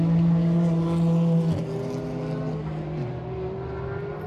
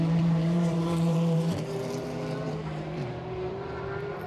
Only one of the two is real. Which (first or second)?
first